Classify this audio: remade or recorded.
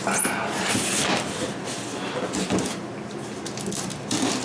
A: recorded